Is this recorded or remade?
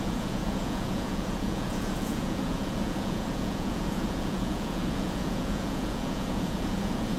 remade